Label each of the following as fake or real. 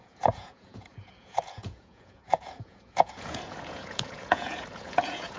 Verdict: fake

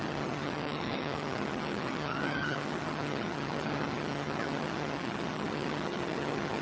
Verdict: fake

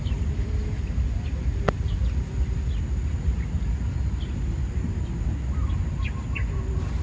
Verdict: real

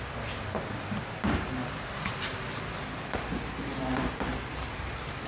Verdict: real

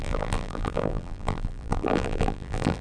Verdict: fake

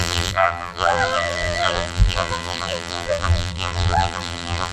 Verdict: fake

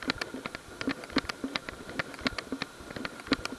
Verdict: real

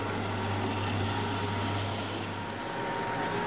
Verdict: real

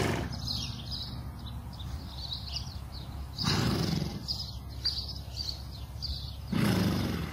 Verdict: real